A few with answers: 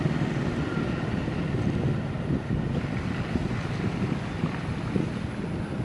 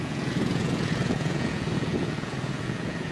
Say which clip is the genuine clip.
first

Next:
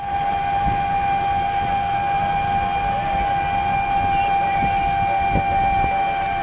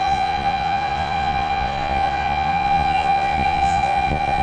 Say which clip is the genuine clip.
first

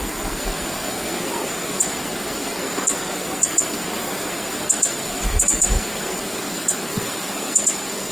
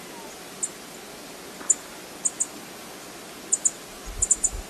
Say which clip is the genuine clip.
second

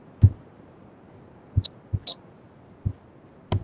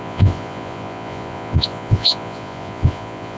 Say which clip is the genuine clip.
first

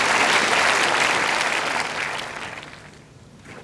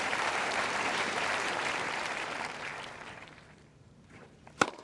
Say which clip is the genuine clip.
first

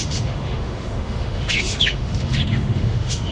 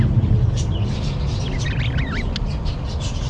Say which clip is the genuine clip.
second